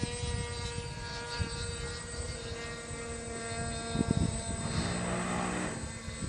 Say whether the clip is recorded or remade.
recorded